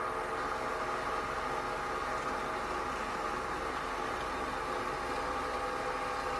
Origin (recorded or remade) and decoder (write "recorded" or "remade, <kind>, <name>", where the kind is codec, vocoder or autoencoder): recorded